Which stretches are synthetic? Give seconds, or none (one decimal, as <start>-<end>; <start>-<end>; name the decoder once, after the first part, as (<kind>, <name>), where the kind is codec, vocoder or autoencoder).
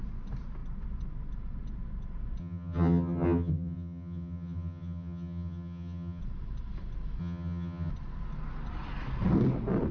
2.4-6.2 (vocoder, HiFi-GAN); 7.2-7.9